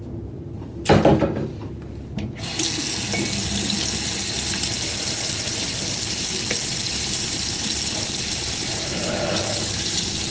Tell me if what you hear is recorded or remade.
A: recorded